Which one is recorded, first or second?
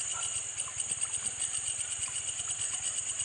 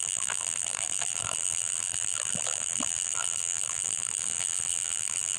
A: first